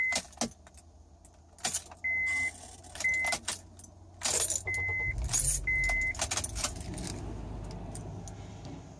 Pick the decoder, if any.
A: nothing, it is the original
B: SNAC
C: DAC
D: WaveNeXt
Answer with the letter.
A